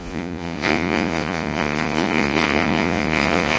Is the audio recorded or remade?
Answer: remade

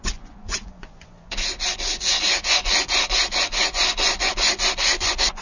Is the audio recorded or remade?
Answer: remade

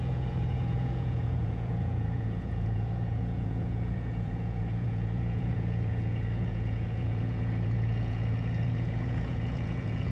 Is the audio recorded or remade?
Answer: remade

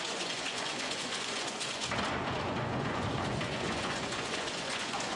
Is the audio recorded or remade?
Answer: remade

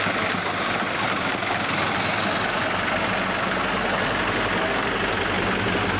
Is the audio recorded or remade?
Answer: recorded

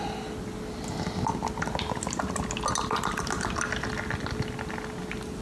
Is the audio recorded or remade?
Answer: recorded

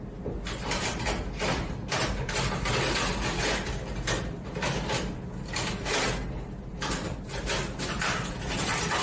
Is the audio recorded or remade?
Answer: recorded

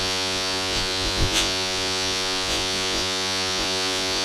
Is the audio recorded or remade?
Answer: remade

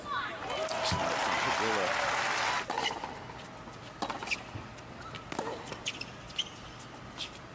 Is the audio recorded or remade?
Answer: recorded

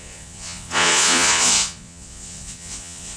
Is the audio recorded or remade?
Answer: remade